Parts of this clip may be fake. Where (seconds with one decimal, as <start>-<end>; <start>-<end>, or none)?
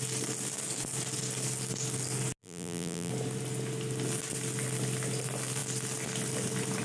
2.4-3.1